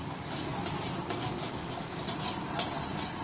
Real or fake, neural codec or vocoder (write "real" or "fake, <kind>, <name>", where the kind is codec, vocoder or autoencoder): real